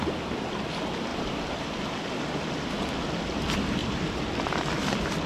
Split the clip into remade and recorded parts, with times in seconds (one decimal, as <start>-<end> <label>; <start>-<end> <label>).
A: 0.0-1.1 recorded; 1.1-1.8 remade; 1.8-3.8 recorded; 3.8-4.3 remade; 4.3-5.3 recorded